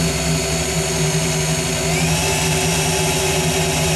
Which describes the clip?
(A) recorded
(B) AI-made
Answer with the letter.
A